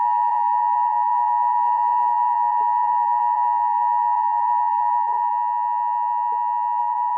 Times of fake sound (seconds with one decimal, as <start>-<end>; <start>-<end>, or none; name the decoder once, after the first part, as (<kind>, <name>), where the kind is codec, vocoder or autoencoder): 0.0-5.3 (vocoder, BigVGAN v2); 6.8-7.2